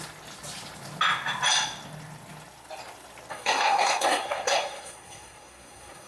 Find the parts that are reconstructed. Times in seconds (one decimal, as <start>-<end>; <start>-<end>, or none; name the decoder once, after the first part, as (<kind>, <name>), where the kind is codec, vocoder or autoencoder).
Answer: 3.3-6.1 (codec, SNAC)

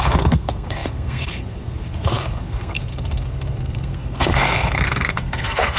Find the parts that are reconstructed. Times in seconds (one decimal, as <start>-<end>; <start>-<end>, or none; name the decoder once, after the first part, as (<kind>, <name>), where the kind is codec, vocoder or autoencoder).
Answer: 0.0-5.8 (codec, SNAC)

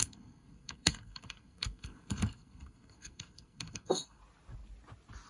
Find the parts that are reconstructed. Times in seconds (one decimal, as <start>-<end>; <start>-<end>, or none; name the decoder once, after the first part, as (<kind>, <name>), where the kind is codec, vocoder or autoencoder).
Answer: 0.0-4.2 (codec, SNAC)